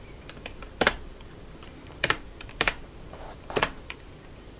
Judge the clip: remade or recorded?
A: remade